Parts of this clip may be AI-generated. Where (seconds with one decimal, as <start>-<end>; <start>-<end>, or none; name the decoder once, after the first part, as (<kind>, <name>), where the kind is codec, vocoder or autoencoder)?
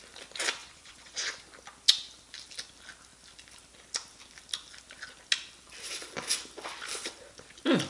0.6-1.4 (vocoder, Vocos)